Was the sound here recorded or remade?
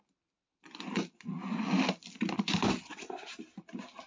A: recorded